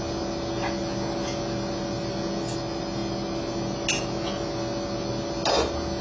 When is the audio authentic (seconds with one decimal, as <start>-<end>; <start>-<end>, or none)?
0.0-6.0